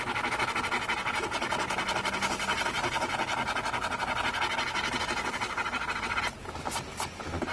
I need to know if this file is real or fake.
real